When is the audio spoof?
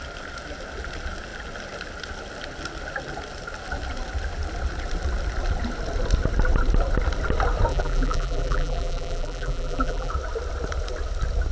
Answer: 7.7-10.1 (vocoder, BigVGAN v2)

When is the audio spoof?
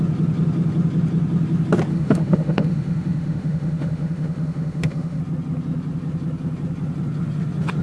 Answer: 1.9-5.2 (autoencoder, DAC-VAE)